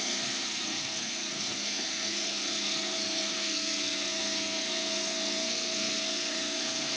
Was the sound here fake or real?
fake